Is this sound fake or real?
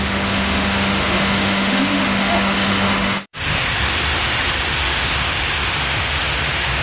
fake